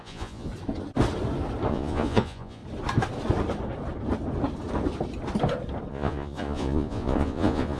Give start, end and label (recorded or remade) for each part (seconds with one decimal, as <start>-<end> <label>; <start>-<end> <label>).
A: 0.0-0.5 remade; 0.5-1.7 recorded; 1.7-2.6 remade; 2.6-5.9 recorded; 5.9-7.8 remade